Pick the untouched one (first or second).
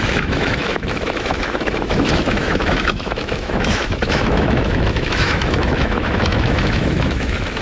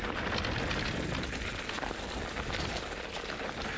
second